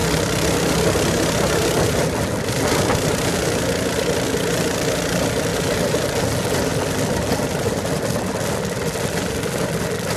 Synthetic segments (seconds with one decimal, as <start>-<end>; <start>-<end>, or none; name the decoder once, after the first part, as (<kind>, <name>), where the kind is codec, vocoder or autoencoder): none